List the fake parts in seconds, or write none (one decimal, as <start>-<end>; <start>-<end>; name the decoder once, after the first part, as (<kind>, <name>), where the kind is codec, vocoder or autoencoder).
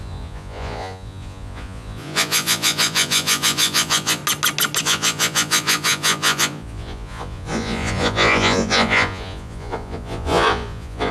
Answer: 0.0-4.2 (vocoder, Vocos); 4.8-11.1